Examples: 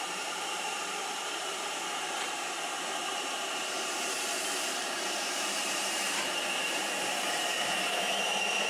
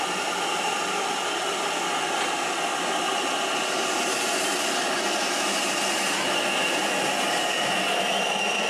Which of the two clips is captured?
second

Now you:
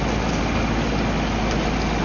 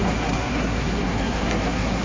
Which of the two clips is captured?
first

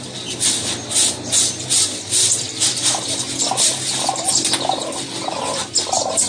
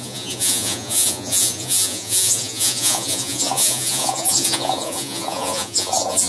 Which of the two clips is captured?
first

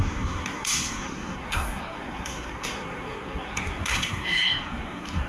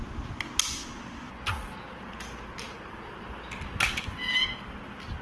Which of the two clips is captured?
second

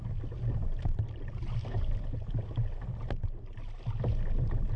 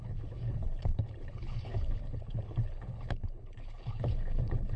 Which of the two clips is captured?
first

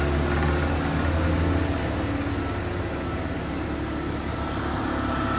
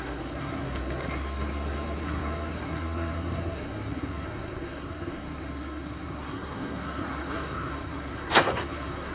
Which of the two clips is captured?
first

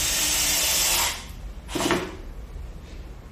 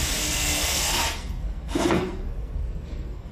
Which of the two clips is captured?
first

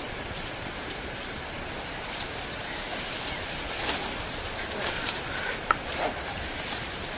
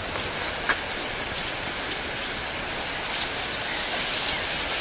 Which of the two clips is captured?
second